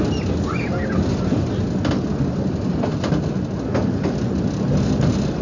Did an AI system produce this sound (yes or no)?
no